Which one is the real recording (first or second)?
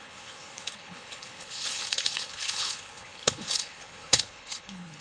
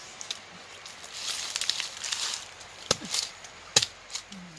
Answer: second